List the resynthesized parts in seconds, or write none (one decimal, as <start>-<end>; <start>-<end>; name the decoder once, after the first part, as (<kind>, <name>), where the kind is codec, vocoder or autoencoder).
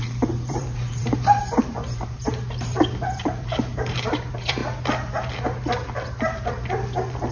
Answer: 0.0-4.6 (vocoder, BigVGAN v2)